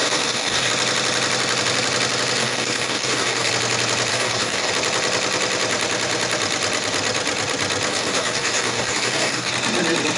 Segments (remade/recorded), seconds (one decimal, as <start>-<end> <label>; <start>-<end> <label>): 0.0-0.7 remade; 0.7-2.4 recorded; 2.4-3.5 remade; 3.5-4.1 recorded; 4.1-4.7 remade; 4.7-7.9 recorded; 7.9-9.5 remade; 9.5-10.2 recorded